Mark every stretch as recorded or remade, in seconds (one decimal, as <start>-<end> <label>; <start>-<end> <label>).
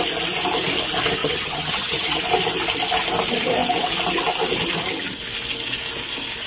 0.0-1.2 recorded; 1.2-2.2 remade; 2.2-6.5 recorded